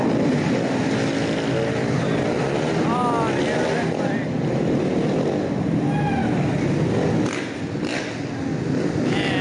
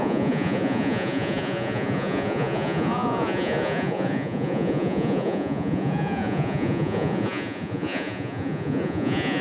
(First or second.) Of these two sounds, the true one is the first